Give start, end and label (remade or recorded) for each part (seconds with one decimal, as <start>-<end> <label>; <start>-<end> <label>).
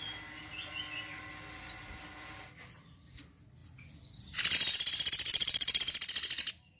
0.0-5.3 recorded; 5.3-5.8 remade; 5.8-6.8 recorded